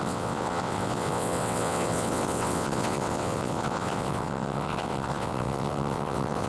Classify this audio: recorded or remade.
remade